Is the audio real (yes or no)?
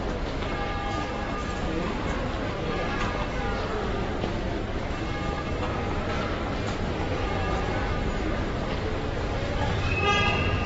yes